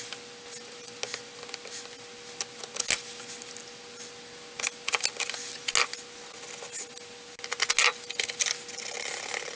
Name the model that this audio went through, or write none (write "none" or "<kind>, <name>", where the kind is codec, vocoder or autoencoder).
none